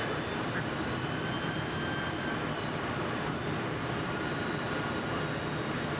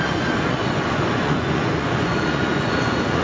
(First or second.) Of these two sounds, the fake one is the second